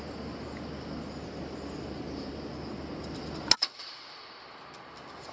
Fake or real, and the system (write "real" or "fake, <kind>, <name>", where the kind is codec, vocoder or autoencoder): real